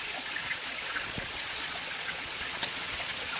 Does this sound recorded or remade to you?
remade